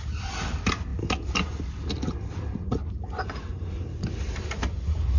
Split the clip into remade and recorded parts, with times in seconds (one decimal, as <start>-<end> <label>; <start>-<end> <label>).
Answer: 0.0-5.2 recorded